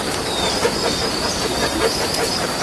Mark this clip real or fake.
real